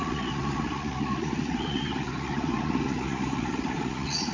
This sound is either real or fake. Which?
fake